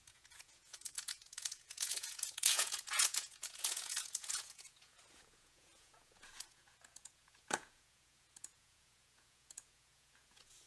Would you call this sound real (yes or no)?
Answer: no